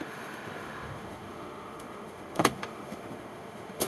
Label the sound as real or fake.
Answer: fake